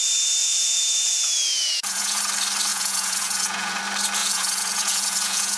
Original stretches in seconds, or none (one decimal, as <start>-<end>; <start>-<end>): 0.0-0.4; 2.2-2.7; 3.8-4.2

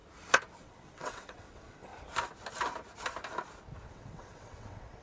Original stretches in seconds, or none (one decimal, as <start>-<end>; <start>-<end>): 0.0-0.6; 1.9-3.9